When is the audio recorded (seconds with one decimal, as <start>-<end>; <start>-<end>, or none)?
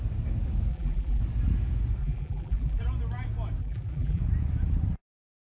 0.0-0.7; 1.2-2.0; 2.8-3.6; 4.2-5.5